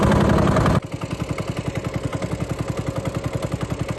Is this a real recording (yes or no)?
yes